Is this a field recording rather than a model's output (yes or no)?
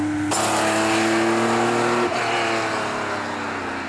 yes